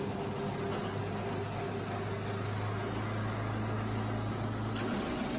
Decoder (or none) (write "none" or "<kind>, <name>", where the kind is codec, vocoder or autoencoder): none